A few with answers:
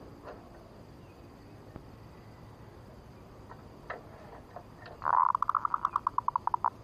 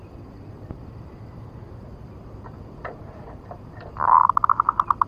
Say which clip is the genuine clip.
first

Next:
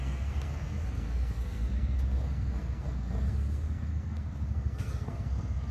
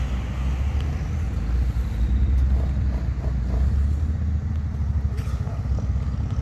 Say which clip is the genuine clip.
second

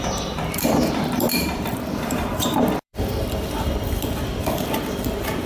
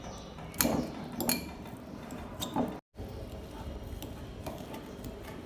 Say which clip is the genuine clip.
second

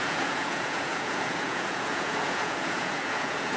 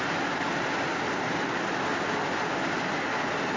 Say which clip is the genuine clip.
second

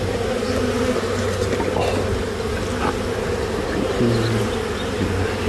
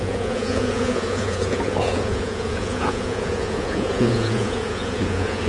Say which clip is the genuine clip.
first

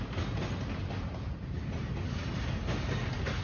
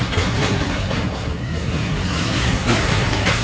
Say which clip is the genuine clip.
first